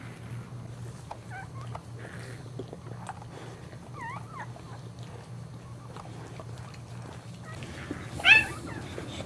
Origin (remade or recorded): recorded